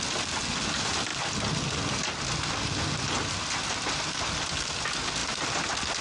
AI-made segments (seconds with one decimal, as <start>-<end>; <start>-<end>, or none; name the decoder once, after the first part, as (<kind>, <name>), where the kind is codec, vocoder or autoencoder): none